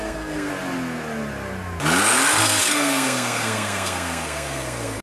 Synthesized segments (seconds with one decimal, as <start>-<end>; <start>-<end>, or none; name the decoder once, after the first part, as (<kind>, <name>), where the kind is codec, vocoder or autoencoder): 0.0-0.5 (codec, SNAC); 2.4-5.0